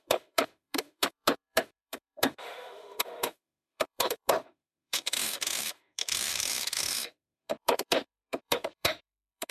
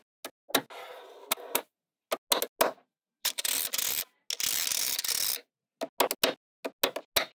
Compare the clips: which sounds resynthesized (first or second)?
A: first